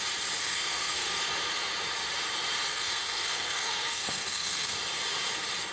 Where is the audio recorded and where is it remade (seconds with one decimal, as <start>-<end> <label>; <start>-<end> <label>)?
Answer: 0.0-0.4 recorded; 0.4-1.2 remade; 1.2-2.7 recorded; 2.7-4.7 remade; 4.7-5.7 recorded